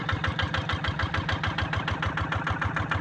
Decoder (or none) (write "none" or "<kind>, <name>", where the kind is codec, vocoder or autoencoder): none